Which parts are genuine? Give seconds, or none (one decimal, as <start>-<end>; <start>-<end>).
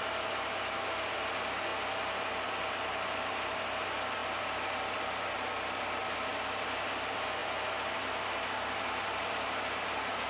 0.0-10.3